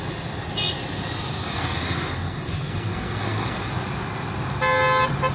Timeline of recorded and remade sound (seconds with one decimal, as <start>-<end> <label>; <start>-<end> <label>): 0.0-1.3 recorded; 1.3-3.7 remade; 3.7-5.3 recorded